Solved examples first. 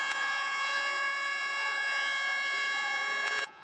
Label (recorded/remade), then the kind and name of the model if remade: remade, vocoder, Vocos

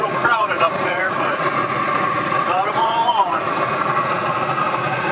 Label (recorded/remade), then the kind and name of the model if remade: remade, vocoder, Vocos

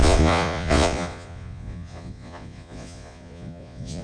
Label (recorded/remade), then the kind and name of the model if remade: remade, vocoder, Vocos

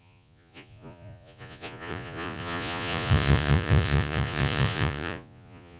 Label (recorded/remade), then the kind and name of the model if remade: remade, vocoder, Vocos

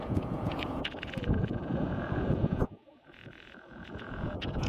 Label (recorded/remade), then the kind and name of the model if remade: remade, vocoder, Vocos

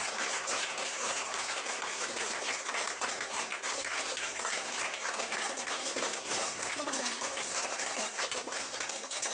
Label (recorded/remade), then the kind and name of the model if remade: remade, codec, SNAC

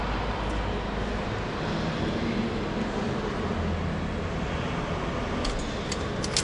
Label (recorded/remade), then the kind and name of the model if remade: recorded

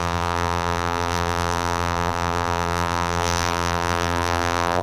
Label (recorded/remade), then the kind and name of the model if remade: remade, vocoder, BigVGAN v2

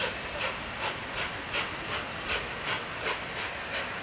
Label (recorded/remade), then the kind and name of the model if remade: recorded